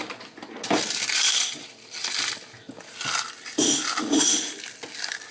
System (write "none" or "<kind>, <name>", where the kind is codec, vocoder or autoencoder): none